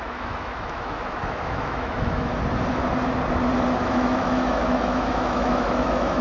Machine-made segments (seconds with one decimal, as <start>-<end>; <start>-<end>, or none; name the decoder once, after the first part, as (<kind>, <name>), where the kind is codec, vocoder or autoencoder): 0.0-2.3 (autoencoder, DAC-VAE); 3.8-6.2